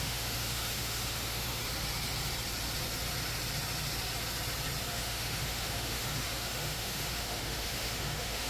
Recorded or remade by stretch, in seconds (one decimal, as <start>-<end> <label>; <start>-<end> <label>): 0.0-1.6 remade; 1.6-4.9 recorded; 4.9-8.5 remade